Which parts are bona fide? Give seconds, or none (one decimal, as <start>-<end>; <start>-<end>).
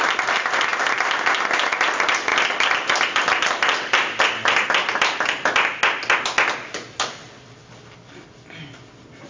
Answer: 0.0-9.3